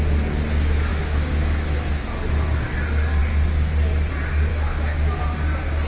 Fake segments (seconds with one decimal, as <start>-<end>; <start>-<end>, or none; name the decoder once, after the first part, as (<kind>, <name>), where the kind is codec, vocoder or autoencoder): 0.9-2.0 (autoencoder, DAC-VAE); 4.5-5.2